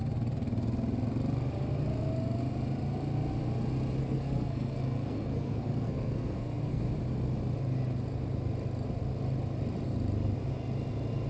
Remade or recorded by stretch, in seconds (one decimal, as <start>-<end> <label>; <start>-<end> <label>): 0.0-4.0 recorded; 4.0-6.8 remade; 6.8-11.3 recorded